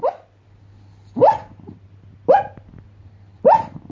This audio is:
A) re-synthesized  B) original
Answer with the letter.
B